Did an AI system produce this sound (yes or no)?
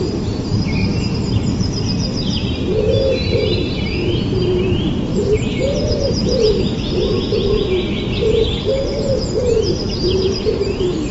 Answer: yes